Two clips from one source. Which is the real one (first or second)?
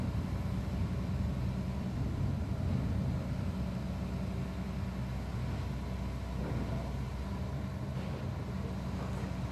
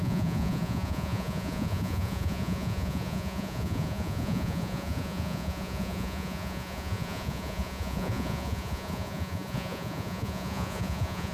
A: first